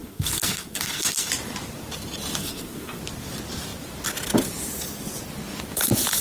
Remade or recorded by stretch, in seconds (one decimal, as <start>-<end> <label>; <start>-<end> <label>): 0.0-1.3 remade; 1.3-2.4 recorded; 2.4-3.0 remade; 3.0-6.2 recorded